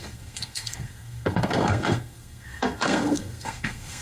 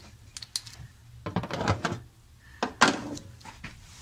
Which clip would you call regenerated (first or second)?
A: first